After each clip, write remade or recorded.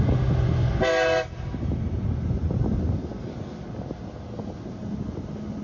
recorded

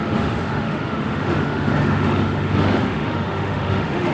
remade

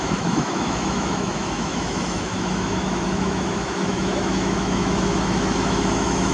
remade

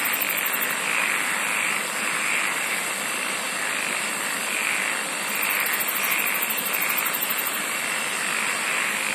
recorded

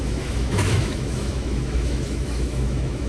remade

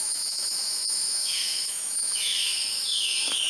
remade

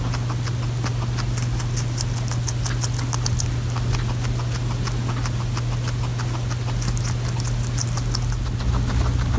recorded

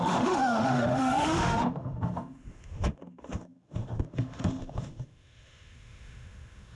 remade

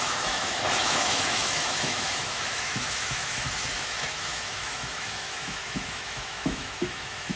remade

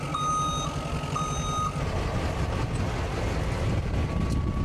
recorded